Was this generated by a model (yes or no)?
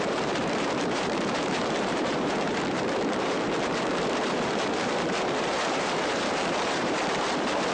yes